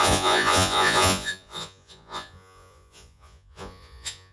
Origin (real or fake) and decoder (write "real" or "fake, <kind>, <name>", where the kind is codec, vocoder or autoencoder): fake, vocoder, Vocos